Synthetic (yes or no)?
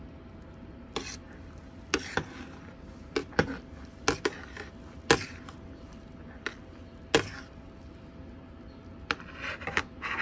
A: no